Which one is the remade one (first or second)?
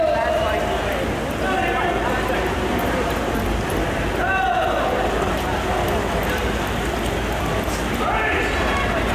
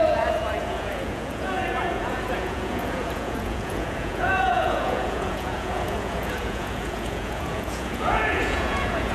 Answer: second